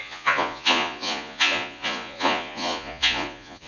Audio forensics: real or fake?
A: fake